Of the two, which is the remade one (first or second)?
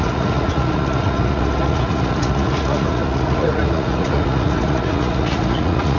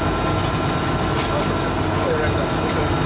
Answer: first